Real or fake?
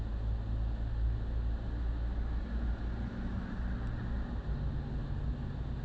real